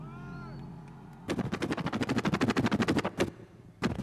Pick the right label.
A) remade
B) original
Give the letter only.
B